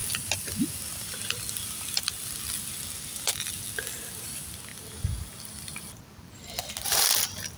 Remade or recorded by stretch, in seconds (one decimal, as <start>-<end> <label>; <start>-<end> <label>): 0.0-7.6 recorded

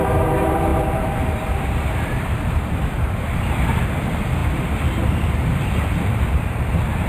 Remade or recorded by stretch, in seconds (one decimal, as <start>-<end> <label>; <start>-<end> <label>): 0.0-7.1 remade

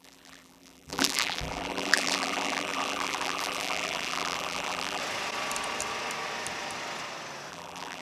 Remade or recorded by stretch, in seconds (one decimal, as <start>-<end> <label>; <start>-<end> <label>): 0.0-5.0 remade; 5.0-7.5 recorded; 7.5-8.0 remade

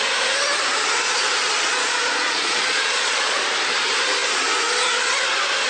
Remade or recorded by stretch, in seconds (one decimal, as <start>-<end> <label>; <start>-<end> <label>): 0.0-1.7 recorded; 1.7-3.4 remade; 3.4-5.7 recorded